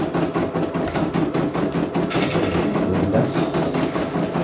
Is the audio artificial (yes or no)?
no